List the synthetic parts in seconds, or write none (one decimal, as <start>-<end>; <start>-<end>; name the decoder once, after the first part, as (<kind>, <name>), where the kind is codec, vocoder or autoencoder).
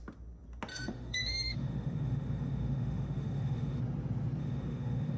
0.7-3.8 (autoencoder, DAC-VAE); 4.4-5.2